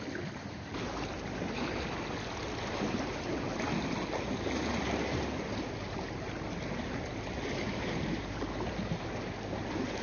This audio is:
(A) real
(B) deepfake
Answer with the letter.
A